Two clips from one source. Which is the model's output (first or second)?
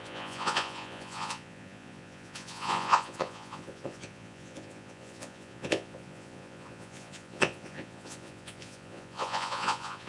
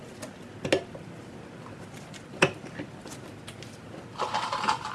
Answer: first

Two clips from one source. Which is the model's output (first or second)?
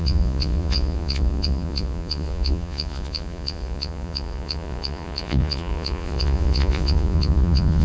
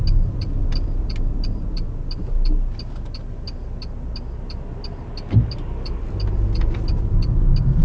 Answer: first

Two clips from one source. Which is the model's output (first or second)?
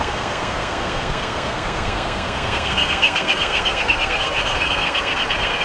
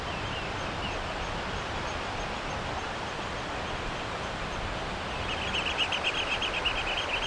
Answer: first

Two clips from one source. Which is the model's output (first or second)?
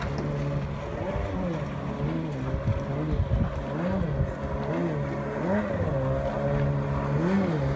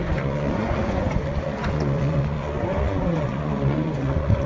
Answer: second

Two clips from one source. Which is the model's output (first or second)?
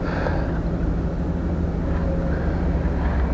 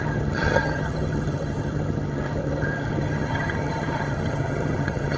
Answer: second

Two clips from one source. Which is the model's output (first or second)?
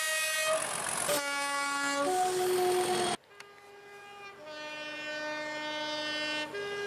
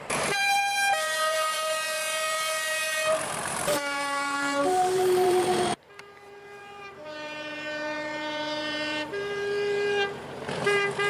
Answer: second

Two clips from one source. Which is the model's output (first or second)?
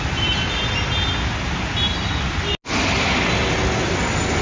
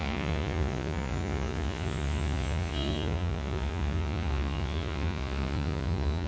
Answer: second